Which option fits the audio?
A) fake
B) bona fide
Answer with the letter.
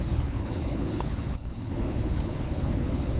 A